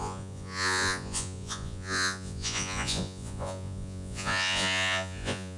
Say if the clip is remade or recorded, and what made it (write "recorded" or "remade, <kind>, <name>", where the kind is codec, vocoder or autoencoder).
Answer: remade, vocoder, Vocos